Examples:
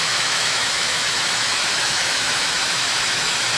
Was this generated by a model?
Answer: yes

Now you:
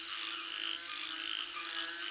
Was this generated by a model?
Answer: no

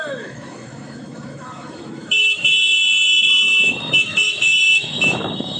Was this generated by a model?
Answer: yes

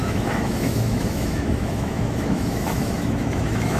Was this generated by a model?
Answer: yes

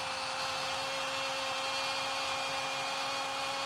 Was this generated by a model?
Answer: no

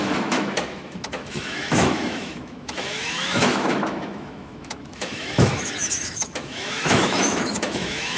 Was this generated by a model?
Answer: yes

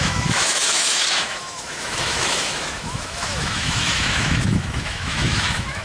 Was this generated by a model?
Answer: yes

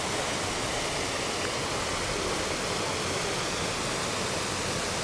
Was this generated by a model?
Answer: no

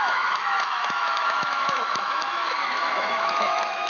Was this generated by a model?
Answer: yes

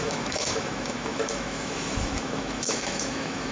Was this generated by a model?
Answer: yes